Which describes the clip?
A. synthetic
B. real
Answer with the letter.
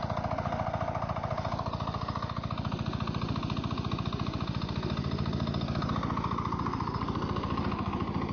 B